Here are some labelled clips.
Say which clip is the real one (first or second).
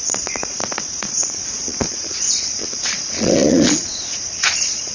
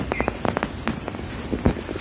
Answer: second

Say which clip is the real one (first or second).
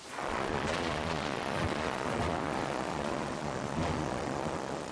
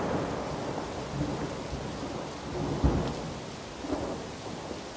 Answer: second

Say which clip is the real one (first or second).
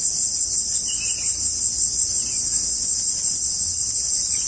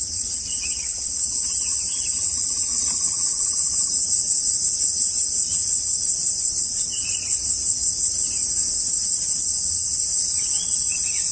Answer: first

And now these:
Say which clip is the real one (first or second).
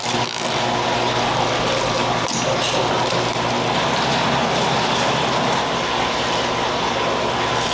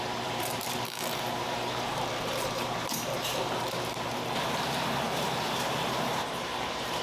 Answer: first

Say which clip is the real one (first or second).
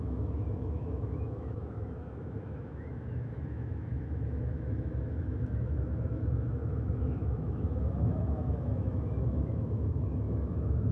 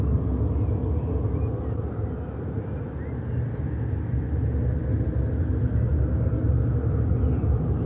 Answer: second